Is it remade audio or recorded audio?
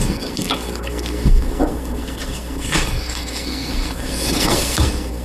remade